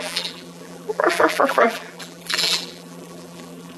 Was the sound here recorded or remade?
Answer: remade